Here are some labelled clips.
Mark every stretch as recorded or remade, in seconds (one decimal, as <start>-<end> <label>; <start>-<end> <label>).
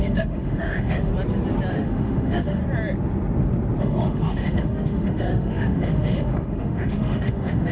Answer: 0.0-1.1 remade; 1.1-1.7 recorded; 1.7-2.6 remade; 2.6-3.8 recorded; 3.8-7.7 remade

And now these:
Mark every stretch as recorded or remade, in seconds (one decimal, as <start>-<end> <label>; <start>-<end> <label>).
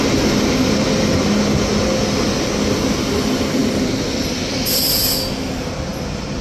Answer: 0.0-6.4 recorded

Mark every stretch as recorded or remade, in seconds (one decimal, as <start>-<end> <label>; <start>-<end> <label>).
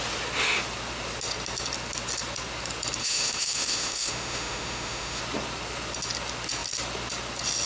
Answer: 0.0-3.0 recorded; 3.0-5.2 remade; 5.2-7.7 recorded